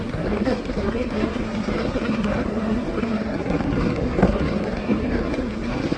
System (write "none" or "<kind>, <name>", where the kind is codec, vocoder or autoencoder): codec, SNAC